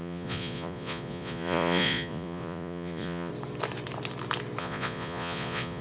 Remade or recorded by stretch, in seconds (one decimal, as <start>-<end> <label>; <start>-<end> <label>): 0.0-3.3 remade; 3.3-4.6 recorded; 4.6-5.8 remade